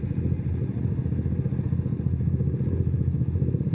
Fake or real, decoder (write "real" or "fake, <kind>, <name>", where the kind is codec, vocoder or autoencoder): real